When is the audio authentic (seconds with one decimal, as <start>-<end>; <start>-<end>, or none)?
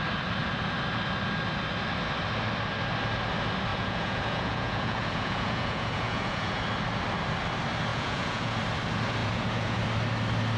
0.0-3.7; 6.6-7.9; 8.6-9.2; 9.8-10.6